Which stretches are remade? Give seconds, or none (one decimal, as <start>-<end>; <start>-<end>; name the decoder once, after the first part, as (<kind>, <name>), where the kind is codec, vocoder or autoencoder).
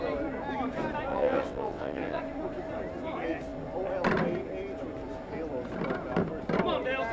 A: 1.1-2.2 (vocoder, WaveNeXt)